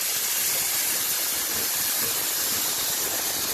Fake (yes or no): no